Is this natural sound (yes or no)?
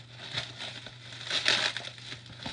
yes